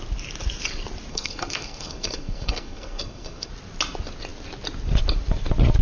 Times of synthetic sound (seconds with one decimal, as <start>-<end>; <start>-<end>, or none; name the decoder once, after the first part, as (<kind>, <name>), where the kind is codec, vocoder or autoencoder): 1.1-3.5 (codec, SNAC)